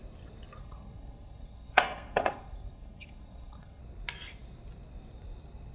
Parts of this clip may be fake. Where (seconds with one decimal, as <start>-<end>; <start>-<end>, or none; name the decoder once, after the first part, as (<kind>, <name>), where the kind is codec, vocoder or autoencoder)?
0.6-3.8 (codec, SNAC)